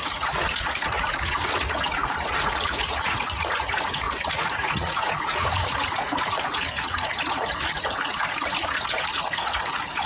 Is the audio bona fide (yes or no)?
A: no